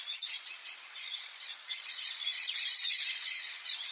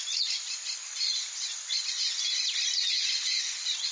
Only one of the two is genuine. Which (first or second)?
second